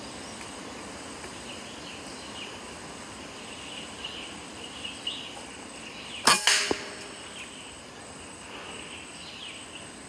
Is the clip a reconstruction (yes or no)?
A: no